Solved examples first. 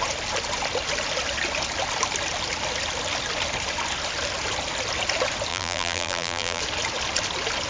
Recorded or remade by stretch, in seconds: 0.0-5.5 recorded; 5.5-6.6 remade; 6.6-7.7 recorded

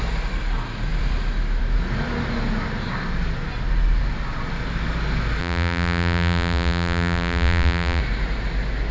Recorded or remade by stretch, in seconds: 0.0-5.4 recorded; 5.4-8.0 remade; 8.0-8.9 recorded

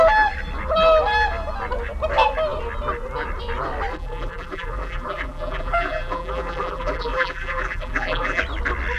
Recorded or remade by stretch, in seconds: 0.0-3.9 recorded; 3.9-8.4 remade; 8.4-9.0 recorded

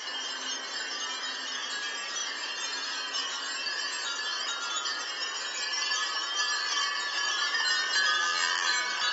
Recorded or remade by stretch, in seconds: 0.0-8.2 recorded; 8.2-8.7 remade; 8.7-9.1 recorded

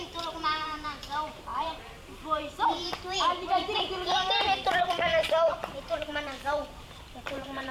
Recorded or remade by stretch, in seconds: 0.0-7.7 remade

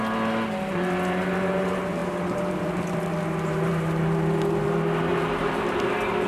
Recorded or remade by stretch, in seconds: 0.0-5.1 recorded; 5.1-6.3 remade

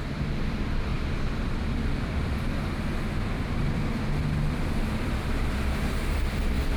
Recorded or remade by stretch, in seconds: 0.0-6.8 remade